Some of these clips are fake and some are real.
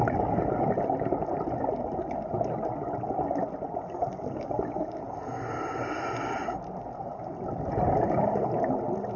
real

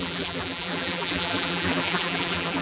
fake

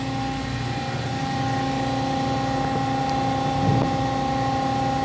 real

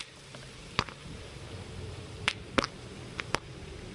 fake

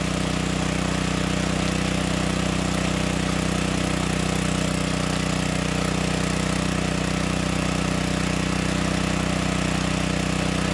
real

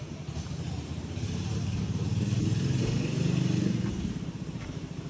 fake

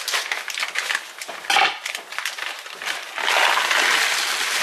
real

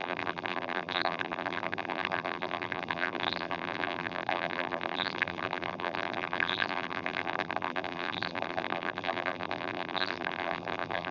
fake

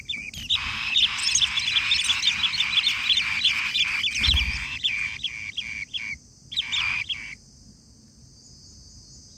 real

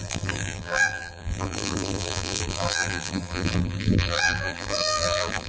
fake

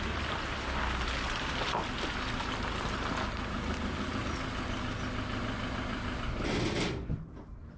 real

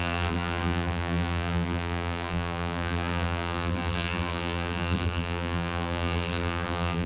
fake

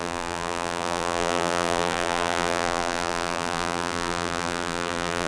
fake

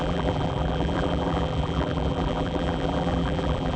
fake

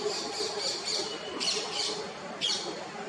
fake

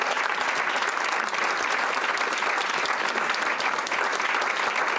real